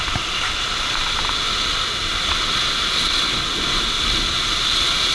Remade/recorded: recorded